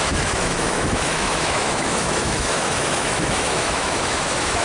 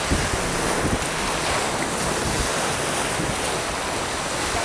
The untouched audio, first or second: second